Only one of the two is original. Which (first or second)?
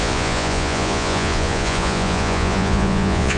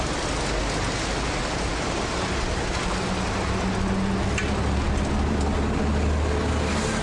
second